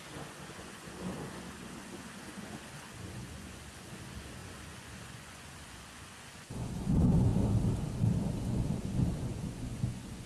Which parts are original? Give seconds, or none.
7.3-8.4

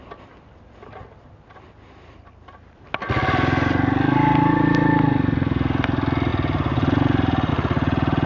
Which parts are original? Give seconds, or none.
0.0-8.3

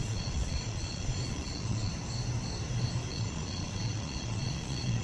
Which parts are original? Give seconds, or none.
1.9-3.1

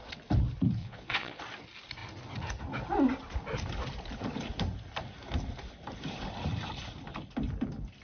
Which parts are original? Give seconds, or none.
0.0-0.8; 1.4-8.0

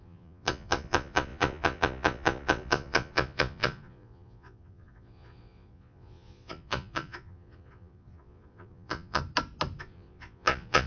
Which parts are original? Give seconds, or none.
9.2-9.8

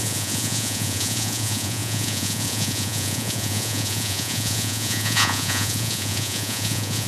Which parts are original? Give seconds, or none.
none

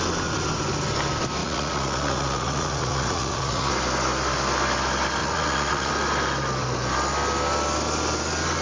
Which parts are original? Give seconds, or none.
0.0-1.4; 3.7-5.2; 5.9-8.6